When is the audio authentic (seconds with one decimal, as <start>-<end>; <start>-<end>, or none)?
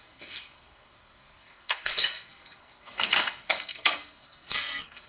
none